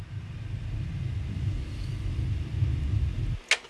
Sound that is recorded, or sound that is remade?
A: recorded